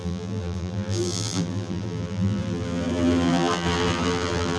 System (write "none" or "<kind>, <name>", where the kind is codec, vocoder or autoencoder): vocoder, BigVGAN v2